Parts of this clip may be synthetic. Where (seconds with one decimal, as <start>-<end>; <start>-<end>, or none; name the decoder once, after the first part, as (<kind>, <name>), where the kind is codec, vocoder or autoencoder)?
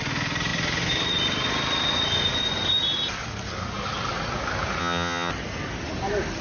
4.8-5.3 (vocoder, HiFi-GAN)